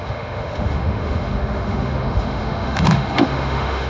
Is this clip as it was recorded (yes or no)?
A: no